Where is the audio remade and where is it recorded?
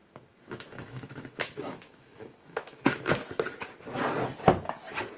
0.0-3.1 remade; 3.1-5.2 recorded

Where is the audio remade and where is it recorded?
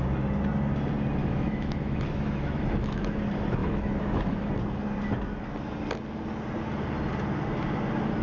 0.0-1.2 recorded; 1.2-3.2 remade; 3.2-3.6 recorded; 3.6-4.5 remade; 4.5-8.2 recorded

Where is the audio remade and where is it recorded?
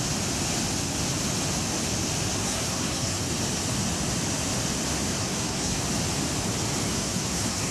0.0-2.4 recorded; 2.4-3.2 remade; 3.2-5.1 recorded; 5.1-5.8 remade; 5.8-6.9 recorded; 6.9-7.7 remade